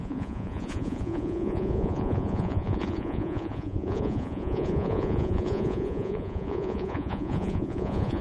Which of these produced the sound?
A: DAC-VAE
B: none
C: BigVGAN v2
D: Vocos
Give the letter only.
D